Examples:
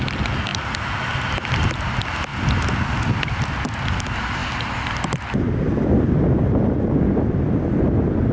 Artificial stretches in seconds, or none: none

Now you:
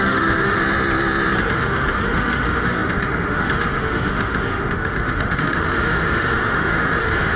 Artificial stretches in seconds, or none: 0.0-0.6 (autoencoder, DAC-VAE); 1.5-7.4